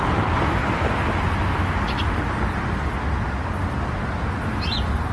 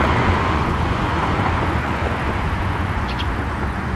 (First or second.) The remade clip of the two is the second